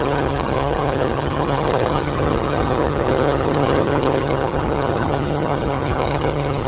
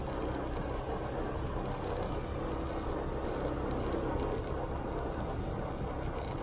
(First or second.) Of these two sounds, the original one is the second